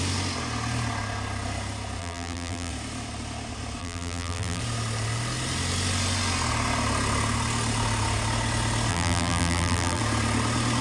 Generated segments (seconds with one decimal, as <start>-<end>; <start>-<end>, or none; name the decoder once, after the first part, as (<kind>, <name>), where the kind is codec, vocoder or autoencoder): 2.0-2.7 (vocoder, BigVGAN v2); 3.8-4.6; 8.9-10.0